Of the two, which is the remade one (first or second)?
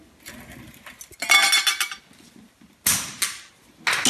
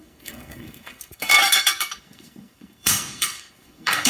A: second